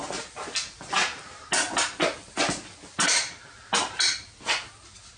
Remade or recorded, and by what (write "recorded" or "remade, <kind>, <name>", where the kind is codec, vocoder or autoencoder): recorded